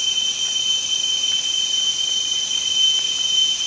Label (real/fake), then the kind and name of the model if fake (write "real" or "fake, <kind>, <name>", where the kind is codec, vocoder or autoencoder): real